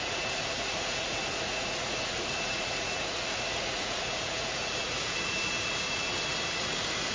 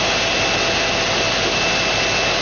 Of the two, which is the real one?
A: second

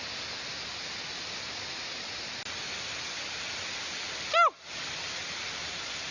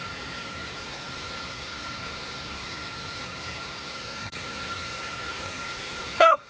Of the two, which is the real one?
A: first